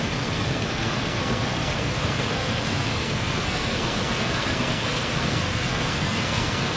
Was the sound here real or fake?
fake